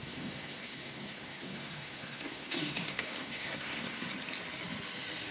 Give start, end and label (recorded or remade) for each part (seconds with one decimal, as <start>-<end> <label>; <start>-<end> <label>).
0.0-4.1 remade; 4.1-5.3 recorded

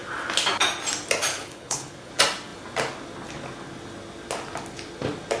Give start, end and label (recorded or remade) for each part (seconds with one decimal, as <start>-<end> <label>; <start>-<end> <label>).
0.0-1.3 recorded; 1.3-2.1 remade; 2.1-5.4 recorded

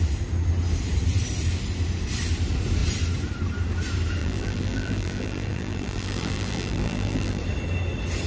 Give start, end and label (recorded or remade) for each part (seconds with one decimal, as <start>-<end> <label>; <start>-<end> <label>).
0.0-4.2 recorded; 4.2-7.4 remade; 7.4-8.3 recorded

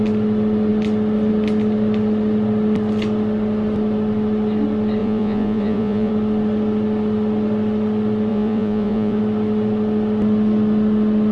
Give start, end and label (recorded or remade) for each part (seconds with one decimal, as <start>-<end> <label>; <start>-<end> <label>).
0.0-5.0 recorded; 5.0-6.1 remade; 6.1-8.3 recorded; 8.3-9.2 remade; 9.2-11.3 recorded

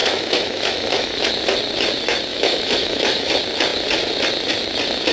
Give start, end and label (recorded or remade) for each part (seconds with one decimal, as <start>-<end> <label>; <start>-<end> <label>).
0.0-1.3 remade; 1.3-2.3 recorded; 2.3-3.3 remade; 3.3-5.1 recorded

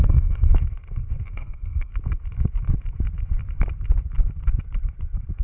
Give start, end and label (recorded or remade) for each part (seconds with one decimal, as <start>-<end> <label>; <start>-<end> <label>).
0.0-0.5 remade; 0.5-1.3 recorded; 1.3-1.9 remade; 1.9-5.4 recorded

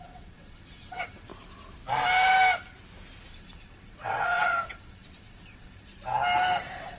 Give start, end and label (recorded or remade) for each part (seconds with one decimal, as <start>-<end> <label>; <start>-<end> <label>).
0.0-1.3 remade; 1.3-3.2 recorded; 3.2-5.9 remade; 5.9-6.6 recorded; 6.6-7.0 remade